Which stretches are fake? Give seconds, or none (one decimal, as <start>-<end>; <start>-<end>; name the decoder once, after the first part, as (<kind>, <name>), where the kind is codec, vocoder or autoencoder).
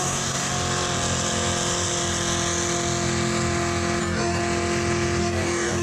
0.0-0.5 (codec, DAC); 4.0-4.4; 5.2-5.8